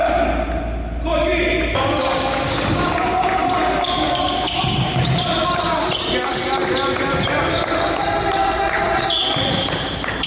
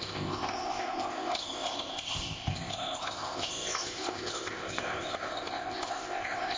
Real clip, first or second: first